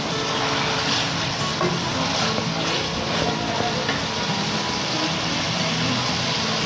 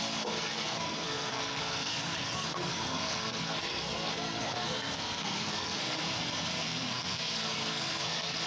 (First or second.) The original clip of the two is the first